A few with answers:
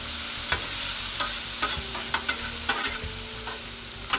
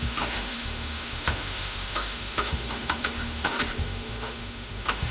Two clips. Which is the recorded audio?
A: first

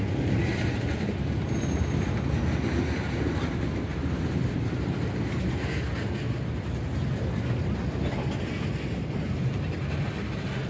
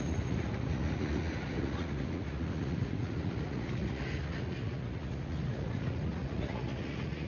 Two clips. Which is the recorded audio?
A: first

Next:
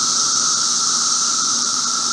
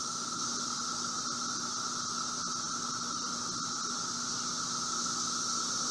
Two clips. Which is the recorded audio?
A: second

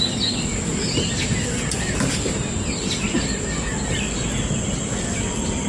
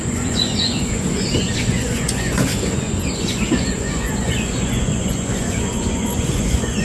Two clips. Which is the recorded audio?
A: first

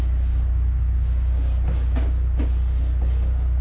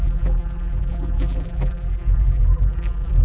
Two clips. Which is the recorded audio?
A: first